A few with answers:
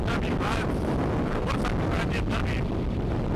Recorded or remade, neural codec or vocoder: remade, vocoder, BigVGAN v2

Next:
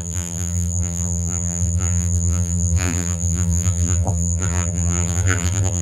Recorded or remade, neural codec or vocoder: remade, vocoder, BigVGAN v2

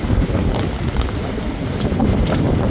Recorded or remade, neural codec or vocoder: recorded